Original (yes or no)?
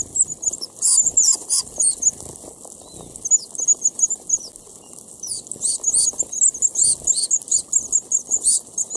yes